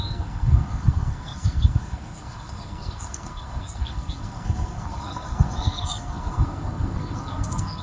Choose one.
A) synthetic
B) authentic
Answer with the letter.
A